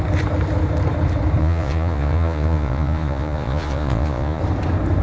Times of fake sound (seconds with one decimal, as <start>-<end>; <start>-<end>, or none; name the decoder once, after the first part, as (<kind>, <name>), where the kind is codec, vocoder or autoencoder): 1.4-4.4 (vocoder, Vocos)